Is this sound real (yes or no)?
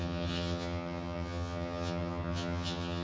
no